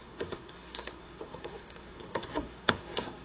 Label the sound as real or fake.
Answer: fake